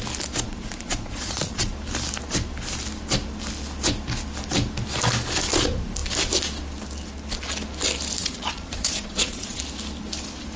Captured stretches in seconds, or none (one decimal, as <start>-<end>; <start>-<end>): 0.0-0.5; 1.7-8.2; 9.6-10.6